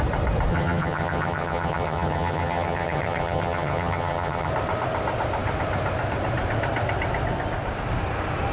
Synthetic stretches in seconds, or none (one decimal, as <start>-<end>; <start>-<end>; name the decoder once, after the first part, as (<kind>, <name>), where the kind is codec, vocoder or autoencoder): 0.5-4.5 (vocoder, HiFi-GAN)